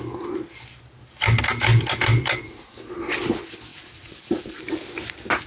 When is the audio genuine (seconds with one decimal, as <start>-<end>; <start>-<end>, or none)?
0.0-3.7; 4.6-5.5